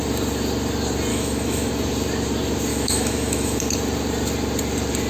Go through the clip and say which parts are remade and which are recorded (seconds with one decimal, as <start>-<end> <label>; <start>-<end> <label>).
0.0-1.1 recorded; 1.1-1.7 remade; 1.7-2.7 recorded; 2.7-3.6 remade; 3.6-5.1 recorded